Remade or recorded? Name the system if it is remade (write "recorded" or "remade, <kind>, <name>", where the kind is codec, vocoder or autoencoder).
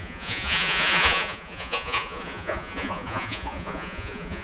remade, vocoder, Vocos